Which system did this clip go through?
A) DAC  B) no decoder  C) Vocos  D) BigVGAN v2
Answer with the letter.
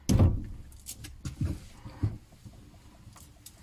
B